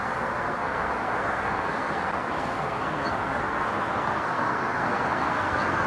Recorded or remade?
remade